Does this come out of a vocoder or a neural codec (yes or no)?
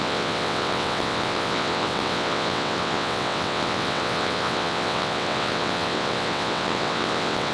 yes